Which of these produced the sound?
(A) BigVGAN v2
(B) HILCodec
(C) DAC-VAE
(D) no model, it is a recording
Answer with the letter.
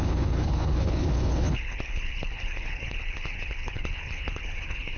B